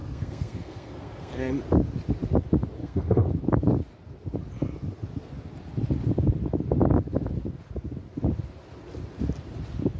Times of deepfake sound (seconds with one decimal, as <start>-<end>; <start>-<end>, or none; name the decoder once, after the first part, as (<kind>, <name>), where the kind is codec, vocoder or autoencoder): 0.0-1.5 (codec, SNAC); 2.8-3.3